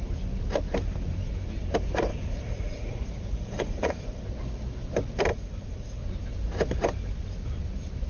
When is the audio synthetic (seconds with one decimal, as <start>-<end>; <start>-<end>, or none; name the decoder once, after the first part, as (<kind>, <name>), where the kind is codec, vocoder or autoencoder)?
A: 2.1-4.2 (vocoder, Vocos); 5.3-6.0